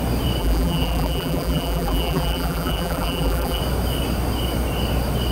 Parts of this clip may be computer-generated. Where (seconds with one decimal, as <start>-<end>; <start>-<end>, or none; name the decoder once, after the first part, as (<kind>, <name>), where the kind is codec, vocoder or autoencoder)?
0.4-3.6 (vocoder, BigVGAN v2)